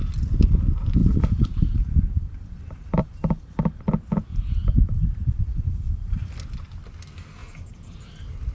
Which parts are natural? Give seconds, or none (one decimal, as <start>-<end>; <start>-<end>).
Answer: 0.0-1.0; 3.8-4.3; 6.3-8.5